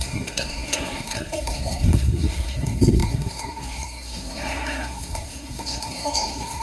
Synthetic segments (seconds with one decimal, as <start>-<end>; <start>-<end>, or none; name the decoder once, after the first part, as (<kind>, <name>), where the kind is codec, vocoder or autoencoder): 0.0-6.6 (codec, SNAC)